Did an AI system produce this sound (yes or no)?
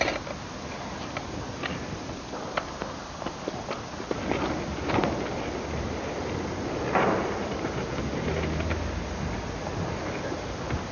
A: no